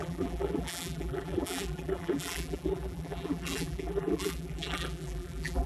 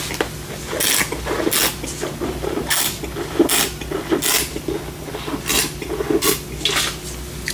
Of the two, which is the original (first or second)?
second